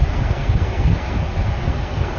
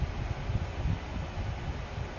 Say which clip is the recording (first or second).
second